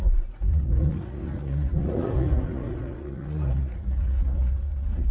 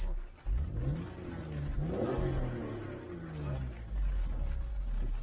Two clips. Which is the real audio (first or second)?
second